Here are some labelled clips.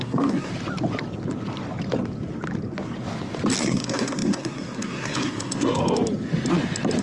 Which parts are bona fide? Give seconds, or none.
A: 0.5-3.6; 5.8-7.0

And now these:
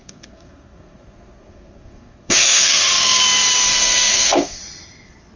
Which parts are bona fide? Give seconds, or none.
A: 3.2-3.7; 4.6-5.4

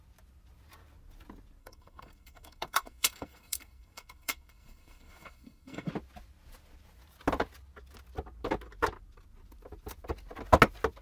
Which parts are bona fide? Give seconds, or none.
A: 0.0-1.6; 5.9-11.0

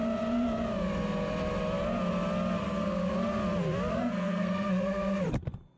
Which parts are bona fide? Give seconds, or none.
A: 0.0-2.6; 3.1-3.9; 5.2-5.8

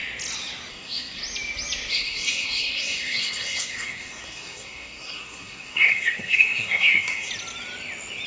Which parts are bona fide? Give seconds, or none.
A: 0.0-0.7; 1.2-1.9; 7.3-8.3

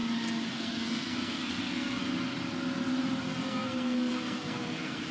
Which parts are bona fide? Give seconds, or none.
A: 0.0-0.5; 2.0-3.3

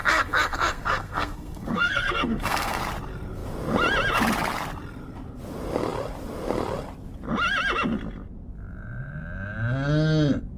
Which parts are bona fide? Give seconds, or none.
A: 2.8-10.6

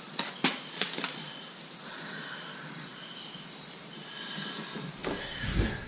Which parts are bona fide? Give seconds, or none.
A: 0.0-5.2